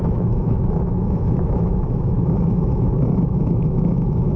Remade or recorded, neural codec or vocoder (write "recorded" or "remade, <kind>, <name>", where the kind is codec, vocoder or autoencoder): remade, autoencoder, DAC-VAE